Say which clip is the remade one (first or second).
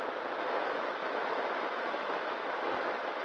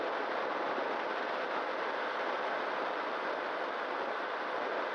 first